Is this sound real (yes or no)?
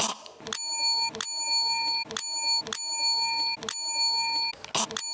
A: yes